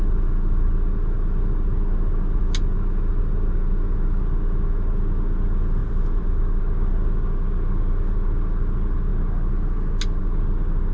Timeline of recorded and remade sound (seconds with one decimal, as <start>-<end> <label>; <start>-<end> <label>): 0.0-5.8 recorded; 5.8-6.6 remade; 6.6-10.9 recorded

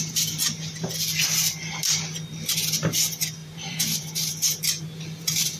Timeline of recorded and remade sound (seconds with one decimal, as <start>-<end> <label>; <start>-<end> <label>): 0.0-3.4 recorded; 3.4-4.3 remade; 4.3-5.6 recorded

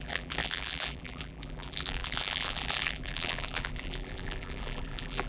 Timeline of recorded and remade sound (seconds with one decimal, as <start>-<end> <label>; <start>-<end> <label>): 0.0-5.3 remade

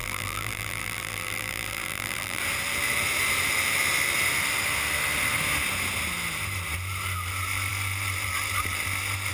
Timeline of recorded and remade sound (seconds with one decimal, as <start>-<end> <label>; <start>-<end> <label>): 0.0-2.4 remade; 2.4-9.3 recorded

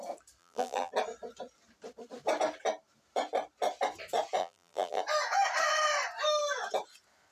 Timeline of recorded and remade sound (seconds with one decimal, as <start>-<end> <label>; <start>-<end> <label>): 0.0-0.4 recorded; 0.4-0.9 remade; 0.9-4.4 recorded; 4.4-5.0 remade; 5.0-7.3 recorded